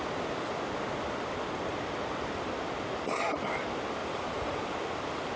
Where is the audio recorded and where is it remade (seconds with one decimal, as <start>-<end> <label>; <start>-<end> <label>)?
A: 0.0-4.0 recorded; 4.0-4.6 remade; 4.6-5.4 recorded

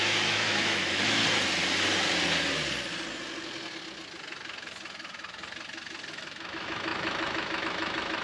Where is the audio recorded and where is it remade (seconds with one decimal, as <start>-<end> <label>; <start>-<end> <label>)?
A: 0.0-1.2 remade; 1.2-6.1 recorded; 6.1-8.2 remade

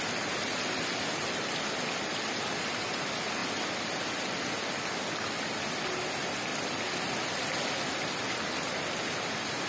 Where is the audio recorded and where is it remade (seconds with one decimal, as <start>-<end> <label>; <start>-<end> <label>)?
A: 0.0-9.7 recorded

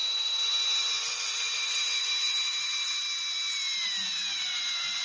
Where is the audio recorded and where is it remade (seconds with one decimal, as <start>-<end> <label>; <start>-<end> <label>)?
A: 0.0-3.0 remade; 3.0-5.0 recorded

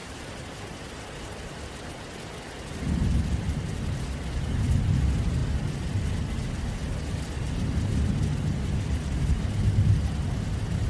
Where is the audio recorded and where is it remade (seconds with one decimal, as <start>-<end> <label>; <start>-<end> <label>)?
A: 0.0-10.9 recorded

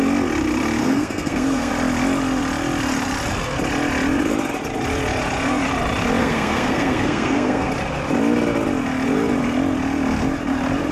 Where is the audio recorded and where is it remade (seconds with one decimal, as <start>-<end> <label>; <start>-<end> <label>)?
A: 0.0-0.8 recorded; 0.8-1.7 remade; 1.7-6.2 recorded; 6.2-7.7 remade; 7.7-10.9 recorded

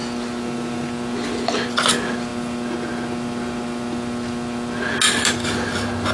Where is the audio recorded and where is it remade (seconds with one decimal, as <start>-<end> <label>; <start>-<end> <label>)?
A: 0.0-6.1 recorded

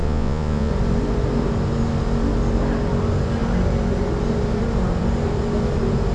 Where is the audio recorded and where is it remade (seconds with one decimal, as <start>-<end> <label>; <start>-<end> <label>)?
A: 0.0-0.7 remade; 0.7-6.1 recorded